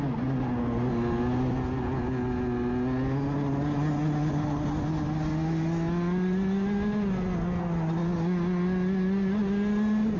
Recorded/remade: recorded